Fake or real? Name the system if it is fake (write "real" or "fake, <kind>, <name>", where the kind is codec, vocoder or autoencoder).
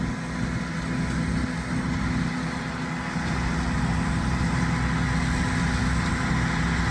real